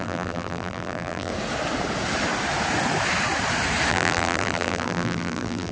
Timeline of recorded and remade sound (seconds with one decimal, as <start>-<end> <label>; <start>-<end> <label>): 0.0-1.3 remade; 1.3-3.9 recorded; 3.9-5.7 remade